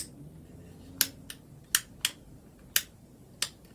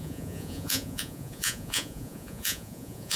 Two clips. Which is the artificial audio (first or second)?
second